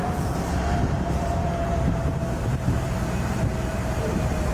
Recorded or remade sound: remade